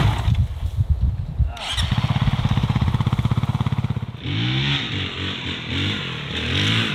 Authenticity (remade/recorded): recorded